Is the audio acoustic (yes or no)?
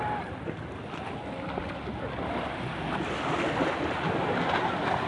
yes